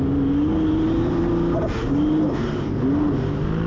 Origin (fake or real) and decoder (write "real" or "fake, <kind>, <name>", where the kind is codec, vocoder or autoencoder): real